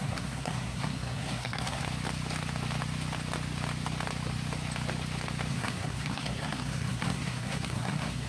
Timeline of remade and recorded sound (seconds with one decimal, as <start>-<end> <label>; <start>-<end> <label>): 0.0-1.8 remade; 1.8-5.5 recorded; 5.5-8.3 remade